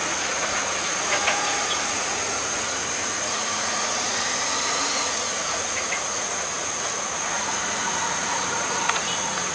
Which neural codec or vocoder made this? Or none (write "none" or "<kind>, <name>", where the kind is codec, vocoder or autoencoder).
vocoder, Vocos